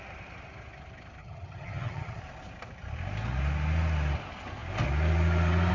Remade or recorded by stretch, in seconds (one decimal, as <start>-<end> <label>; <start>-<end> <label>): 0.0-1.2 recorded; 1.2-2.2 remade; 2.2-5.7 recorded